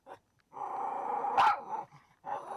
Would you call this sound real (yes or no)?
yes